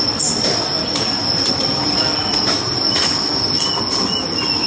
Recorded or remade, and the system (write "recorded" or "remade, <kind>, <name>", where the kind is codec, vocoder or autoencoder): recorded